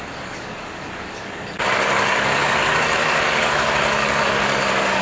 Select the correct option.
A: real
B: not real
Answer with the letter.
B